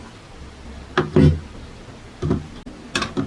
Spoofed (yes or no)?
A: no